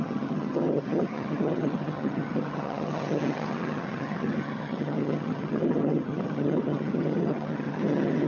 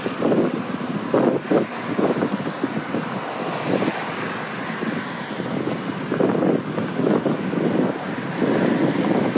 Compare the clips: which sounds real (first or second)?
second